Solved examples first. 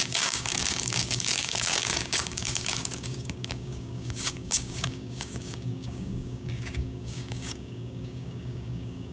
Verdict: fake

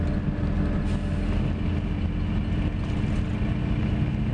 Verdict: real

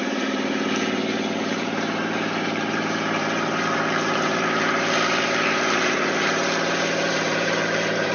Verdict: fake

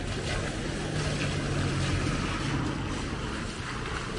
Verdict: real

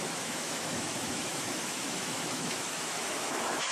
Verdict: fake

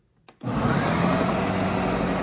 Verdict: real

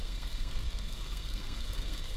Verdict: fake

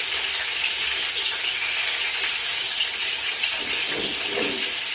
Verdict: real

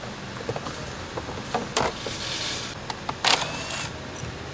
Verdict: real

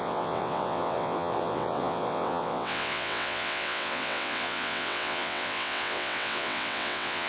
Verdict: fake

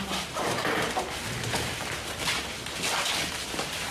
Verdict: fake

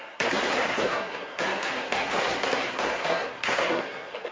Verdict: fake